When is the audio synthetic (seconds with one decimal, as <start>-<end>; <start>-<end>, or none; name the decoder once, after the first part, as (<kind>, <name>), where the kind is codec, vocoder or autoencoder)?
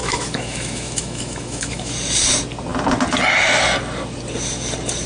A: 0.0-1.9 (autoencoder, DAC-VAE)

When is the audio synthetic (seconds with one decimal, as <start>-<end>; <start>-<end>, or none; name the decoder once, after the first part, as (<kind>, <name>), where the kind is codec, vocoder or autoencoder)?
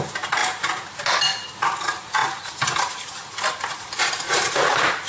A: none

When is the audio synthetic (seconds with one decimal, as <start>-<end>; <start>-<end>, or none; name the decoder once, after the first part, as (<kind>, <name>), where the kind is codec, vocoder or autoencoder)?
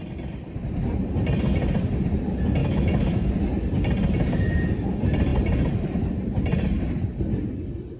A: 2.6-3.3 (autoencoder, DAC-VAE)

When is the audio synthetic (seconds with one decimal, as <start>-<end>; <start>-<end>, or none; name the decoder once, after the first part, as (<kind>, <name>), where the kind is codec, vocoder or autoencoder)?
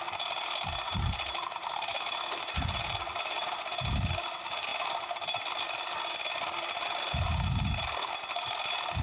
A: 1.9-2.4 (autoencoder, DAC-VAE)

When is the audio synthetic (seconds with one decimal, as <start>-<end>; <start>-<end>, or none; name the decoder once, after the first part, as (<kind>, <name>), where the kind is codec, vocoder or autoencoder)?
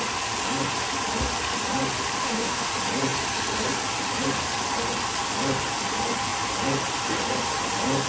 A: 2.2-2.7 (autoencoder, DAC-VAE)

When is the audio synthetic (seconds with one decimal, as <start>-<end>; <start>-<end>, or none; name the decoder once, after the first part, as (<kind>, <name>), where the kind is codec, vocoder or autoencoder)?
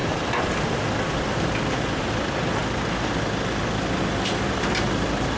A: none